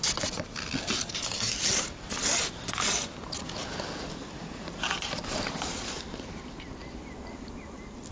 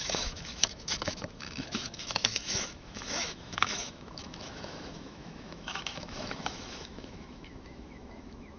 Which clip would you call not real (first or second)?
second